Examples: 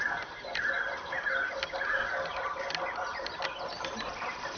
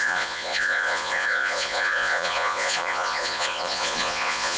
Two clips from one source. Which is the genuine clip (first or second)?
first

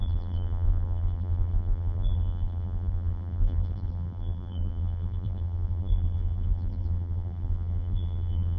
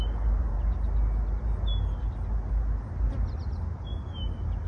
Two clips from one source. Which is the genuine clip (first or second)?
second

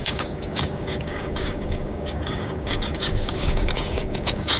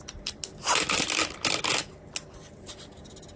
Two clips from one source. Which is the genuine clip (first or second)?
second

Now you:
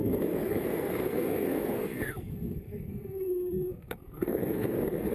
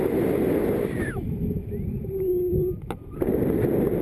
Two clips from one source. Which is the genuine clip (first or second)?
second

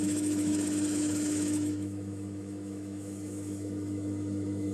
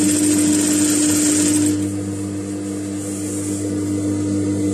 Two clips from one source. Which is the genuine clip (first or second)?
second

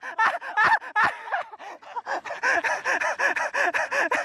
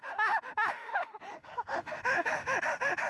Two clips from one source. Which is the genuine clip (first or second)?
first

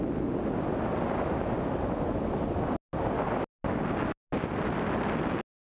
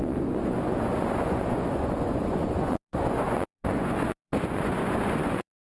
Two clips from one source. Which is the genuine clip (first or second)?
first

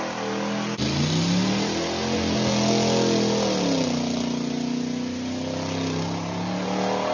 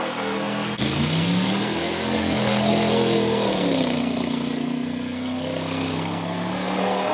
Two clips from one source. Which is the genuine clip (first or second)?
first